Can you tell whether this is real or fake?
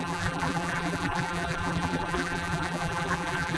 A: fake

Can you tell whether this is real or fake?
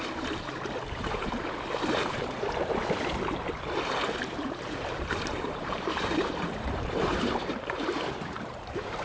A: fake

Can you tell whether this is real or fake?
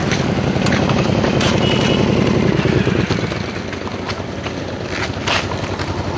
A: real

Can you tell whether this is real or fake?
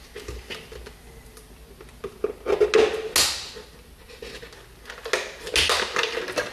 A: real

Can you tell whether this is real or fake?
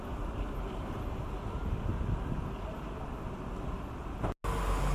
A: real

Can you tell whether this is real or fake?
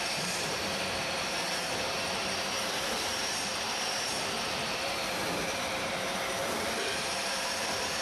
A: fake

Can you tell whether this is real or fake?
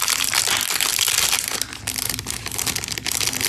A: real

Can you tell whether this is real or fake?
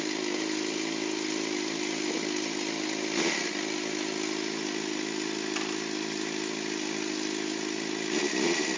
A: real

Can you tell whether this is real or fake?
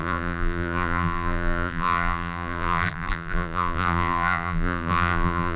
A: fake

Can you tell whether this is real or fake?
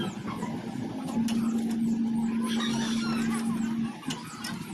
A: real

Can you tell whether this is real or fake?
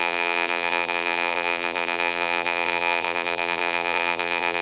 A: fake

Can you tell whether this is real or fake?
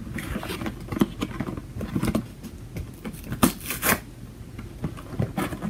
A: real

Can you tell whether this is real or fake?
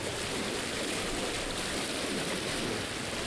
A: real